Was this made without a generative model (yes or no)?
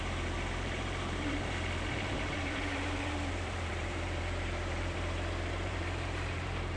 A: no